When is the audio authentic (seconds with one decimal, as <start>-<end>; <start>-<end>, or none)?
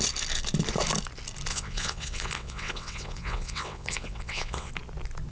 0.0-1.5; 4.7-5.3